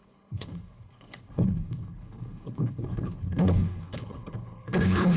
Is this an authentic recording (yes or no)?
no